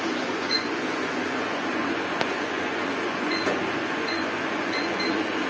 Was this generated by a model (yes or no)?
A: yes